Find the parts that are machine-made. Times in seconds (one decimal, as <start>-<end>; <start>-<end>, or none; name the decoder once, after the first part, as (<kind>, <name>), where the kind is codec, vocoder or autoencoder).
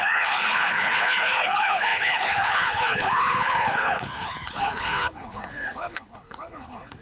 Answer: 0.0-7.0 (codec, HILCodec)